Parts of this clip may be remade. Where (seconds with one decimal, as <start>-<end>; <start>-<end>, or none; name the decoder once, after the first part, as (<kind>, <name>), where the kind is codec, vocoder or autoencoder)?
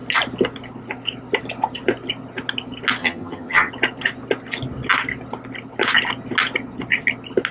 3.0-3.7 (vocoder, HiFi-GAN)